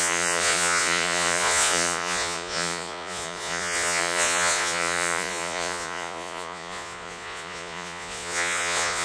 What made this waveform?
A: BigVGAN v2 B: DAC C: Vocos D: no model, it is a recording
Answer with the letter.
C